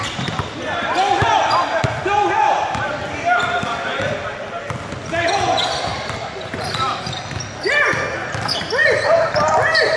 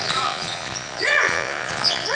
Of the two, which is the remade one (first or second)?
second